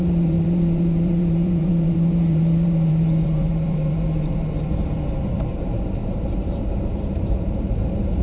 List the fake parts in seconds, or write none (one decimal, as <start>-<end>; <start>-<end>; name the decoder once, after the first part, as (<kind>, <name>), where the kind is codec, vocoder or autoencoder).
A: 0.0-8.2 (vocoder, BigVGAN v2)